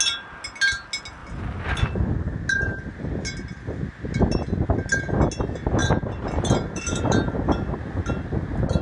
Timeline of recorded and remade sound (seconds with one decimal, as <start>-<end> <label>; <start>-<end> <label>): 0.0-5.8 recorded; 5.8-7.5 remade; 7.5-8.8 recorded